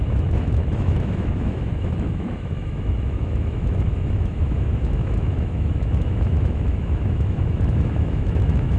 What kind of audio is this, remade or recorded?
remade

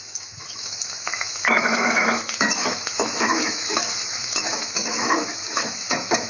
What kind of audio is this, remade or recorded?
remade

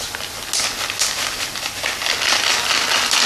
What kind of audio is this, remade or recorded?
recorded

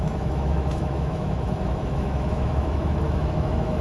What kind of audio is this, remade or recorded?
remade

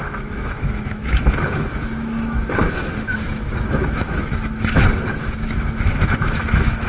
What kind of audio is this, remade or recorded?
remade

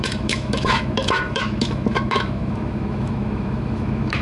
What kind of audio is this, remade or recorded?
remade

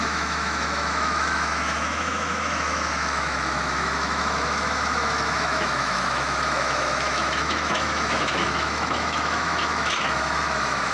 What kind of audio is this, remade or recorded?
remade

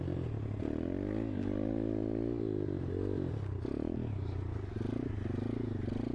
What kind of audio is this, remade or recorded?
recorded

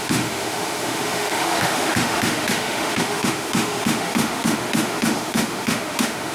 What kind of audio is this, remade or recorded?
remade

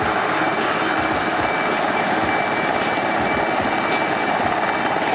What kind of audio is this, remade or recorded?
recorded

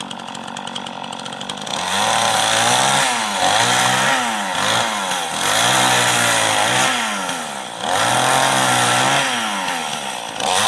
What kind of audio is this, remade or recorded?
recorded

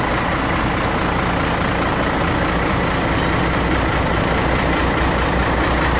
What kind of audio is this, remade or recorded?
recorded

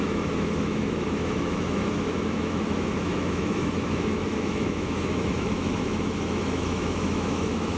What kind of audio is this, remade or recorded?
remade